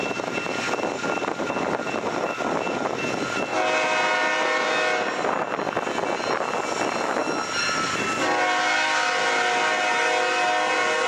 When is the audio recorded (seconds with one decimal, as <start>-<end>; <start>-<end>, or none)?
0.0-11.1